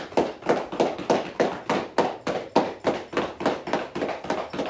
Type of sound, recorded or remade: recorded